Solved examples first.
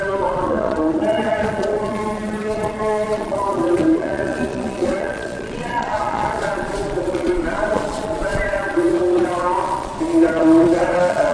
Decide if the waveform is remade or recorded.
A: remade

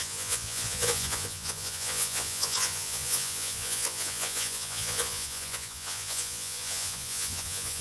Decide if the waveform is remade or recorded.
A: remade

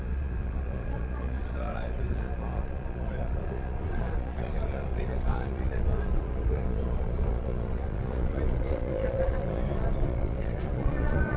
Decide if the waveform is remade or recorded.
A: remade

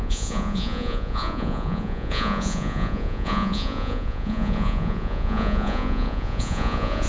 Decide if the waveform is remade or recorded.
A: remade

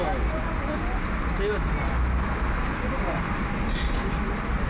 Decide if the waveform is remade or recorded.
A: recorded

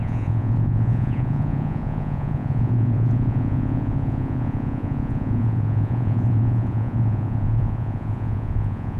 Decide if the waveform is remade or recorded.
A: remade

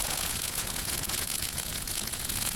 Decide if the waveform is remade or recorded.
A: remade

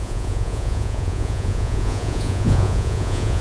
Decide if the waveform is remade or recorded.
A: remade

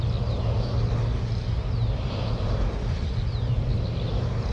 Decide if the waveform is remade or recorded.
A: recorded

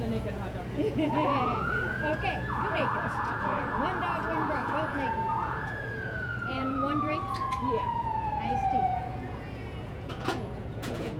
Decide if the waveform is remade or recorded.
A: remade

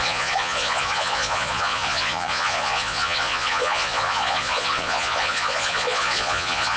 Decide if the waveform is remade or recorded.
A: remade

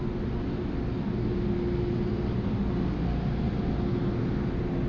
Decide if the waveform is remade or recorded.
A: recorded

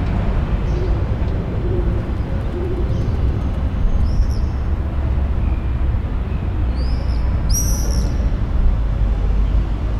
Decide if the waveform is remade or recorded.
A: recorded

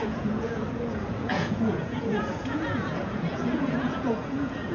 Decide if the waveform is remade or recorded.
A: remade